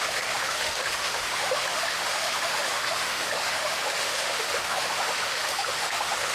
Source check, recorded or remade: remade